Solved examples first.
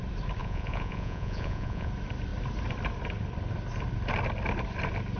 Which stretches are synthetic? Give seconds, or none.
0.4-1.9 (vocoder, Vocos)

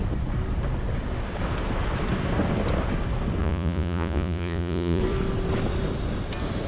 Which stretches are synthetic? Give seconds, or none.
3.4-5.0 (vocoder, Vocos)

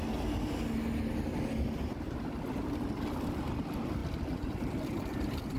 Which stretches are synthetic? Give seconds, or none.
none

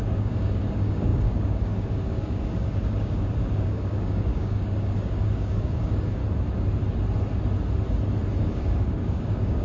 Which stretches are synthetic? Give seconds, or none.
0.0-6.2 (codec, DAC); 8.4-9.6

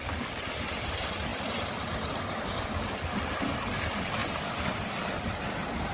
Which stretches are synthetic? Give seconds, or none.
none

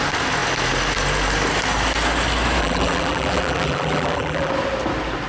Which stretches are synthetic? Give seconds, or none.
2.6-4.5 (vocoder, BigVGAN v2)

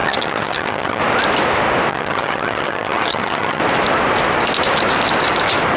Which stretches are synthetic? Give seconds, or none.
0.0-1.0 (vocoder, HiFi-GAN); 1.9-3.6

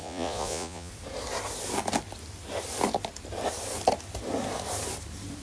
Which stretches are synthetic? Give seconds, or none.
0.0-0.9 (vocoder, Vocos)